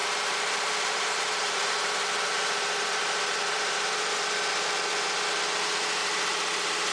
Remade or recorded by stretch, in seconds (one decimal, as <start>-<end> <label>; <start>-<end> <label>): 0.0-4.1 remade; 4.1-6.0 recorded; 6.0-6.9 remade